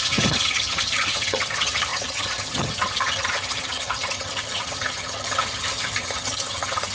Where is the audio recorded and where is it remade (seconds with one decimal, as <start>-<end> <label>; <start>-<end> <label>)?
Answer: 0.0-6.9 remade